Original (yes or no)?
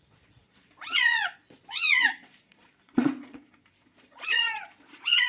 no